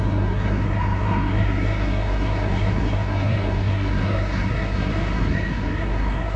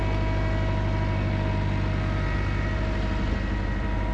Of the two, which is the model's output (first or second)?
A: first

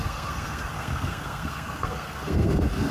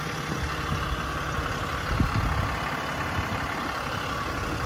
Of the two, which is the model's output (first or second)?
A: first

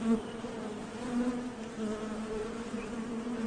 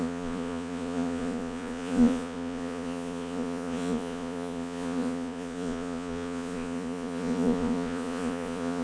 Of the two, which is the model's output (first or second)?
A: second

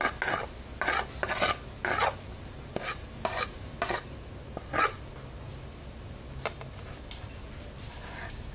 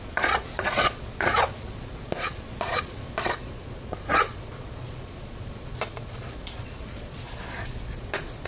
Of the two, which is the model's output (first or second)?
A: second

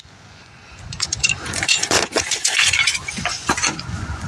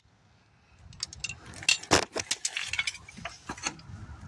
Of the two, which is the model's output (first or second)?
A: first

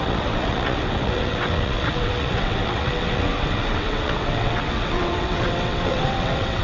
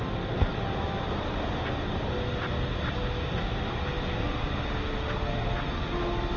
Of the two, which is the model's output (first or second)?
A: first